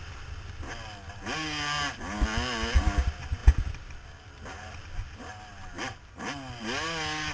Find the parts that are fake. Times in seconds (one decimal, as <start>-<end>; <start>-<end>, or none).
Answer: none